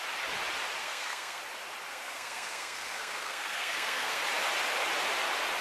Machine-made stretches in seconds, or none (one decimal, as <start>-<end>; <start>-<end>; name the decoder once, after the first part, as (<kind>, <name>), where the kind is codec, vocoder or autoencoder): 0.8-1.4 (codec, SNAC); 1.9-4.2